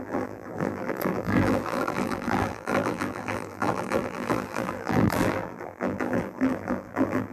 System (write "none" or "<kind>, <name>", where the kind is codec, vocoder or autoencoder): vocoder, BigVGAN v2